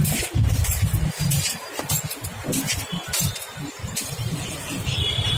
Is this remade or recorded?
remade